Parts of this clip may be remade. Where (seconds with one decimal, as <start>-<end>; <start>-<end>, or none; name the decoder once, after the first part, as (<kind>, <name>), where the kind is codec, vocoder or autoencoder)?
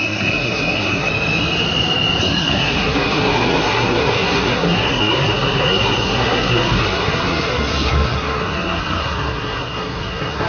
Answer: 0.0-1.1 (codec, SNAC); 2.2-10.5